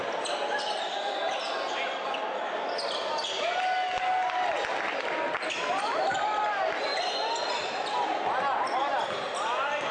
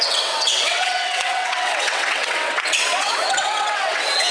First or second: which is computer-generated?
second